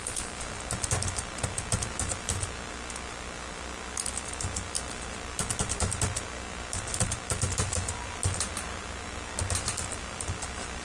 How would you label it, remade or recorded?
recorded